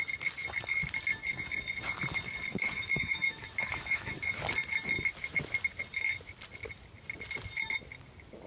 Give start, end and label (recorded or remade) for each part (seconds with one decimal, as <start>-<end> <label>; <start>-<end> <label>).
0.0-2.5 recorded; 2.5-4.4 remade; 4.4-8.5 recorded